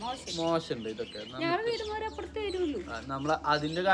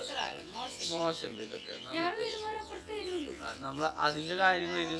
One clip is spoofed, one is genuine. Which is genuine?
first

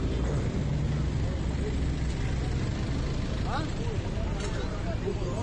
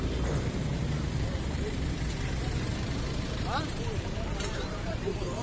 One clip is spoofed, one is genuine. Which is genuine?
first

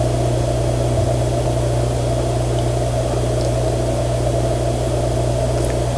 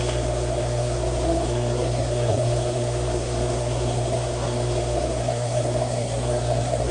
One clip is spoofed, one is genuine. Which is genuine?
first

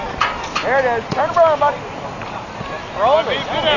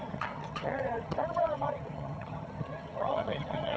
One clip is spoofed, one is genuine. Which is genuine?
first